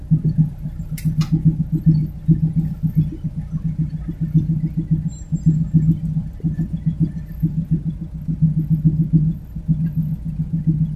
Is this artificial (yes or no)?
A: no